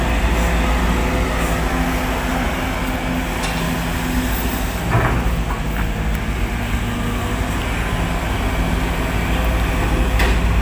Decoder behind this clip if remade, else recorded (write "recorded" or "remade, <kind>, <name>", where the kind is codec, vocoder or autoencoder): recorded